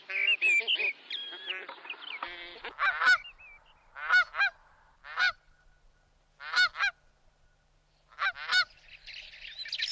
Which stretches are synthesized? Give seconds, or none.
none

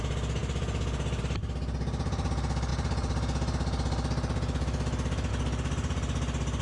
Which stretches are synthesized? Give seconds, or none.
none

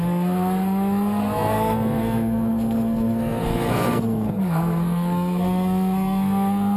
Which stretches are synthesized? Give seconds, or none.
0.0-6.8 (codec, SNAC)

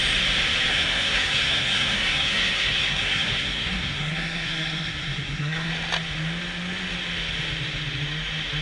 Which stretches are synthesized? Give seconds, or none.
0.7-5.7 (codec, SNAC)

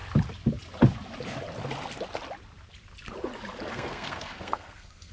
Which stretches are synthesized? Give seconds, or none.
3.7-5.1 (codec, SNAC)

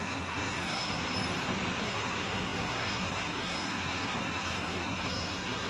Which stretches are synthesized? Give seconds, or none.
0.0-1.0 (codec, SNAC); 1.8-5.7

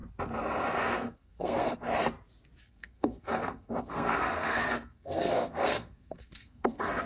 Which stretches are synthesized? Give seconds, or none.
0.8-1.9 (codec, SNAC); 2.6-7.1